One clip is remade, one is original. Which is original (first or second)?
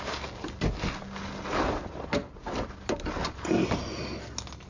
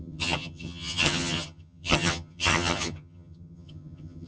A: first